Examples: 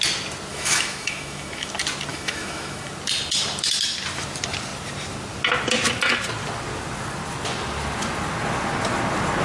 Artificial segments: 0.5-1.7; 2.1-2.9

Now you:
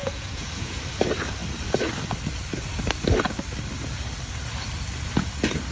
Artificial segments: 0.0-0.8